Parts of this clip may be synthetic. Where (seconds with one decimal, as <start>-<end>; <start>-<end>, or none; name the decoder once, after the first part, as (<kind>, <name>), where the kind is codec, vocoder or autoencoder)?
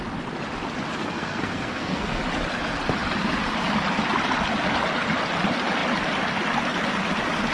1.0-2.2 (codec, SNAC)